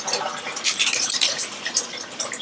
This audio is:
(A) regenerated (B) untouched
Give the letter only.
B